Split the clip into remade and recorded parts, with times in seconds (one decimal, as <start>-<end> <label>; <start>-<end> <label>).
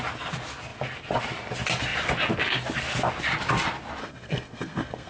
0.0-4.0 recorded; 4.0-5.1 remade